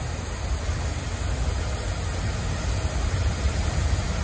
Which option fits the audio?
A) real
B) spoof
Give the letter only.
A